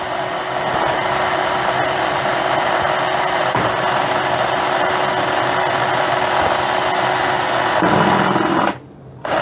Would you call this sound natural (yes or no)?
yes